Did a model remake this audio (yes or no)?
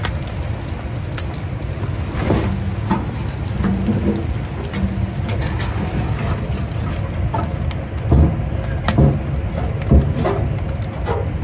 no